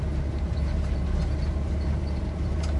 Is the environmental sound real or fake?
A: fake